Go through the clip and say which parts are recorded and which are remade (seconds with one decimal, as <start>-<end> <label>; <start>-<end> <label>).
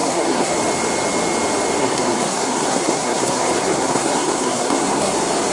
0.0-0.5 remade; 0.5-1.8 recorded; 1.8-5.1 remade; 5.1-5.5 recorded